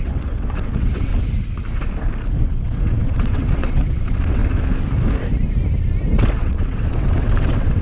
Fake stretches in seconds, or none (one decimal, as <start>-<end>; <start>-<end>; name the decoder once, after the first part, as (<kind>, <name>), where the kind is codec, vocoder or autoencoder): 0.0-1.1 (vocoder, WaveNeXt); 2.4-4.4; 6.3-7.8